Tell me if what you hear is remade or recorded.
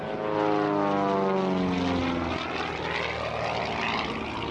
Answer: recorded